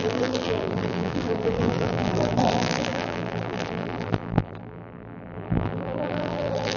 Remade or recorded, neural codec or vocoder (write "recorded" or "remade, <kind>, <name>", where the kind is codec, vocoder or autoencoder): remade, vocoder, BigVGAN v2